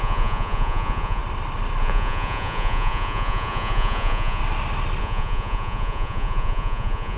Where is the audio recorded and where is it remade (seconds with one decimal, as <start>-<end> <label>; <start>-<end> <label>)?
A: 0.0-1.2 remade; 1.2-1.8 recorded; 1.8-4.4 remade; 4.4-5.0 recorded; 5.0-7.2 remade

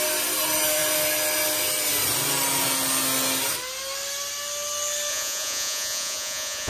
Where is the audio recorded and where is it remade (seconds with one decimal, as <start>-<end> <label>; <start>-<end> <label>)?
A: 0.0-5.1 recorded; 5.1-6.7 remade